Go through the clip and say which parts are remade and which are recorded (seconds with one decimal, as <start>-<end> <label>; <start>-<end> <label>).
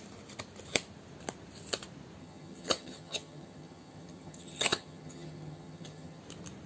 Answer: 0.0-2.2 recorded; 2.2-6.2 remade; 6.2-6.7 recorded